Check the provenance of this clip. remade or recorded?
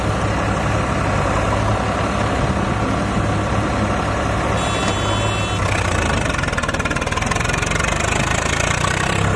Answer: recorded